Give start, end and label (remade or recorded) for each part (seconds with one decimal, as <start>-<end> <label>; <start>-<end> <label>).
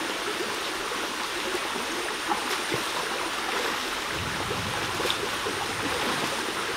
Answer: 0.0-6.8 recorded